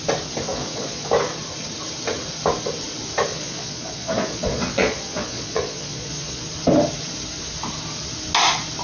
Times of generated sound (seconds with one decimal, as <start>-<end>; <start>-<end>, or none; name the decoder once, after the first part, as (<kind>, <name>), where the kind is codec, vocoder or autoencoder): 0.5-1.1 (vocoder, Vocos); 3.3-6.4